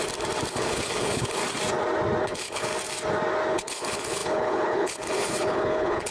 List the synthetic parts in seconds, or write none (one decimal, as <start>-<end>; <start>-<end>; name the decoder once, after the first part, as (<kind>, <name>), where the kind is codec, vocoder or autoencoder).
0.5-1.4 (codec, HILCodec); 2.2-2.7; 3.5-6.1